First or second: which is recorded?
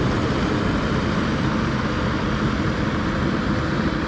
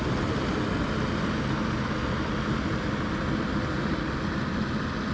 second